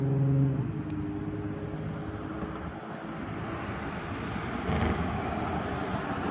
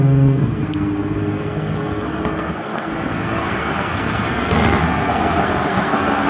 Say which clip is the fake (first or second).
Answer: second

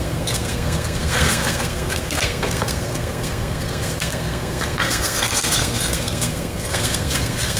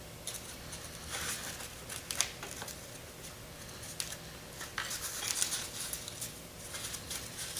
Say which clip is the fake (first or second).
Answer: first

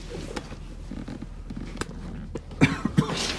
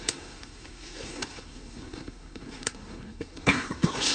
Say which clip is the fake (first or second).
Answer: second